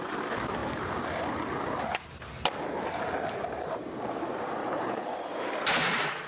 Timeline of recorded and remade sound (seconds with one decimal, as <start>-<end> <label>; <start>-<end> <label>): 0.0-4.6 recorded; 4.6-5.1 remade; 5.1-6.3 recorded